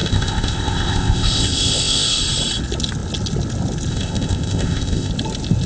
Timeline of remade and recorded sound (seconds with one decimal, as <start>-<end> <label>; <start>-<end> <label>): 0.0-2.2 remade; 2.2-3.9 recorded; 3.9-5.1 remade; 5.1-5.7 recorded